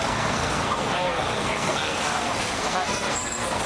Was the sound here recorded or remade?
remade